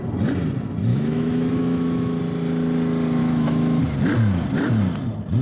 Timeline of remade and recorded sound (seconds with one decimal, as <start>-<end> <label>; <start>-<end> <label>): 0.0-0.9 recorded; 0.9-2.2 remade; 2.2-3.2 recorded; 3.2-3.8 remade; 3.8-5.4 recorded